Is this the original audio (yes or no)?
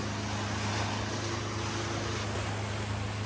yes